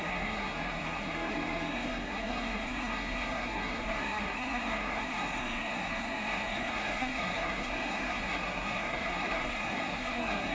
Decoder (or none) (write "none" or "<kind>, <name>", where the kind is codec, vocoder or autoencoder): codec, SNAC